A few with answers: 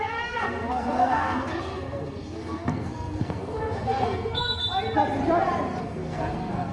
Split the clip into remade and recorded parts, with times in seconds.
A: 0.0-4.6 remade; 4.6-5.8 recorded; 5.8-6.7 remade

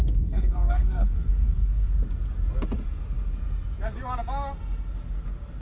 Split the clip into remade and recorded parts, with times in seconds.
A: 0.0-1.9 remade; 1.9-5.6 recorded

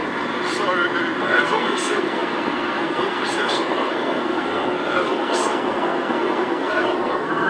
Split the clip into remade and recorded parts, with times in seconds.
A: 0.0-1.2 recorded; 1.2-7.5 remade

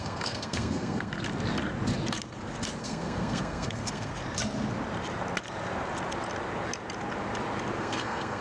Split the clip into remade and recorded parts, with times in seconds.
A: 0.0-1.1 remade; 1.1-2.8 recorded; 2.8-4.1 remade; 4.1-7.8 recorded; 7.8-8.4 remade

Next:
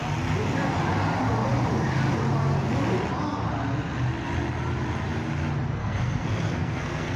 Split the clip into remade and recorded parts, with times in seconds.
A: 0.0-5.8 recorded; 5.8-7.2 remade

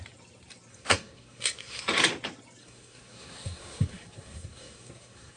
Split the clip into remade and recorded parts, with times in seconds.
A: 0.0-0.7 recorded; 0.7-1.8 remade; 1.8-2.6 recorded; 2.6-5.4 remade

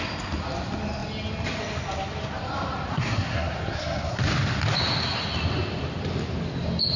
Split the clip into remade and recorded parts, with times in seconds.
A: 0.0-2.9 recorded; 2.9-4.2 remade; 4.2-7.0 recorded

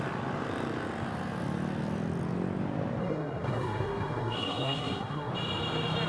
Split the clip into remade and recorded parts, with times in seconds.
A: 0.0-3.0 recorded; 3.0-5.3 remade; 5.3-6.1 recorded